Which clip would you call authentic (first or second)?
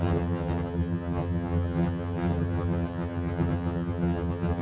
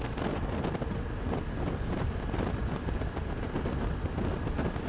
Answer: second